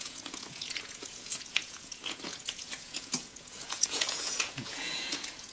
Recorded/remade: remade